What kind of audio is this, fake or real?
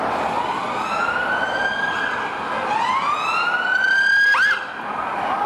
real